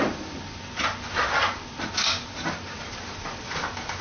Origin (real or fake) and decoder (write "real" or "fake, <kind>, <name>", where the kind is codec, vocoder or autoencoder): real